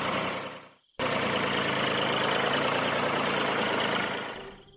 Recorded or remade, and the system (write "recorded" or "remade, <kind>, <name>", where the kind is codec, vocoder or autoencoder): recorded